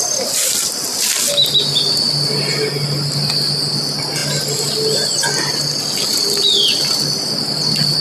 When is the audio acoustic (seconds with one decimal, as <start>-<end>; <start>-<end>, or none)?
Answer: 0.0-8.0